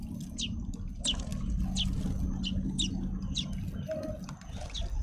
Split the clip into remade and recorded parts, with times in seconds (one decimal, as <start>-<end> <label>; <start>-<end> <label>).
0.0-5.0 recorded